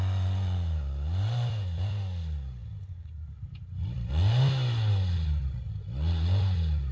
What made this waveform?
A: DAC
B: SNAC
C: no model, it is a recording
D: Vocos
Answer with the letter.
C